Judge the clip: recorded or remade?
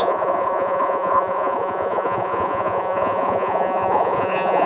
remade